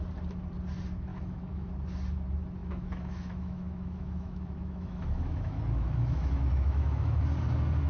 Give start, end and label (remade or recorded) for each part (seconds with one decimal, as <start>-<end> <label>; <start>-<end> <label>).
0.0-1.1 recorded; 1.1-1.7 remade; 1.7-2.6 recorded; 2.6-7.2 remade; 7.2-7.9 recorded